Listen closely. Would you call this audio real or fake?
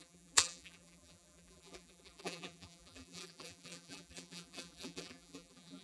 fake